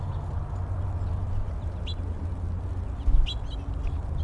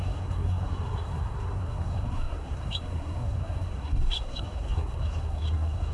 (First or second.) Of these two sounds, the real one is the first